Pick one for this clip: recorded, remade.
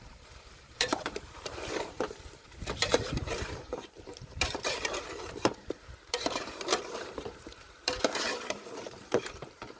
remade